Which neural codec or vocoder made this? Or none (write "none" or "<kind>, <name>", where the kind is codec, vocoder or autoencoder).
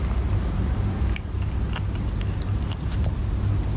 none